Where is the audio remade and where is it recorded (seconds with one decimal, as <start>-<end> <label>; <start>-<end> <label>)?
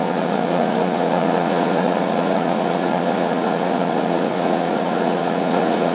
0.0-5.9 remade